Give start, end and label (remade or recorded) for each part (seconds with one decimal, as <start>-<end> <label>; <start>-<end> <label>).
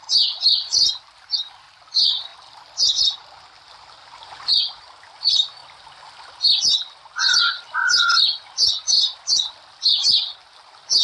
0.0-11.0 recorded